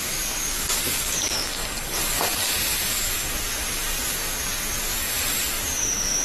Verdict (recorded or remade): remade